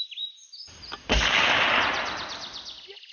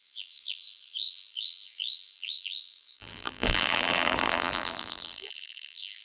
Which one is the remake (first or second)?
second